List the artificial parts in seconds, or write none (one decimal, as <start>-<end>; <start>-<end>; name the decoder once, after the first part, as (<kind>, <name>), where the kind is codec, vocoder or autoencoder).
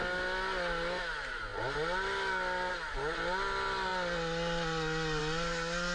none